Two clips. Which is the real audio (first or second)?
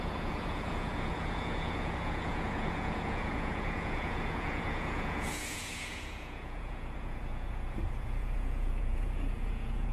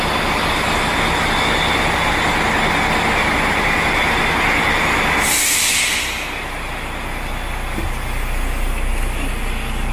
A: second